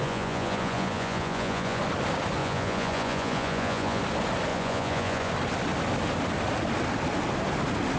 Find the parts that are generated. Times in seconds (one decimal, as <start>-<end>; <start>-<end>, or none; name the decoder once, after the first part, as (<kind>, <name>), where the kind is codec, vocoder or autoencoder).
0.0-1.8 (vocoder, Vocos); 2.4-4.0; 4.5-5.3